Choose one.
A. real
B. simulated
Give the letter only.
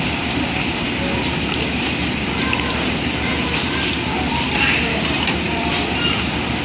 B